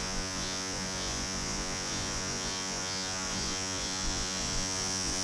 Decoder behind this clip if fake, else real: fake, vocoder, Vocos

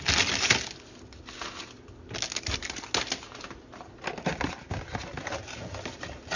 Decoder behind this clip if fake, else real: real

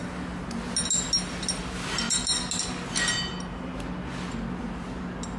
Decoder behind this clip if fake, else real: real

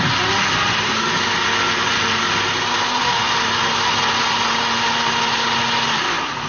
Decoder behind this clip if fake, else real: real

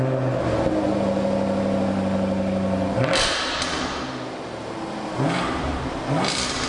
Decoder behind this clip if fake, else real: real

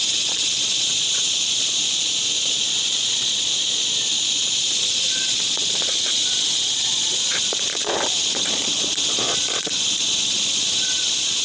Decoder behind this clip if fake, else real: fake, vocoder, Vocos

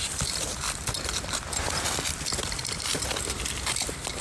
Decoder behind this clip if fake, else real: fake, vocoder, BigVGAN v2